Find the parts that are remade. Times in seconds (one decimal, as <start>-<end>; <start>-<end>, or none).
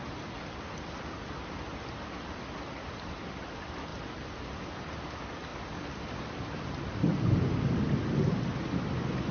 3.9-5.1